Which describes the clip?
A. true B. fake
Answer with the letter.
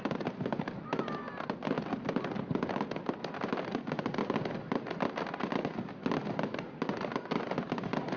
A